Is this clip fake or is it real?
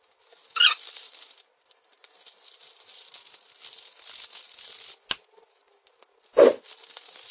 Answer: real